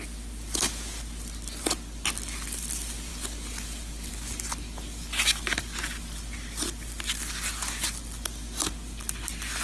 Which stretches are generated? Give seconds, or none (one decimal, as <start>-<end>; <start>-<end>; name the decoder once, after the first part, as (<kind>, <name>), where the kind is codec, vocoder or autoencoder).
none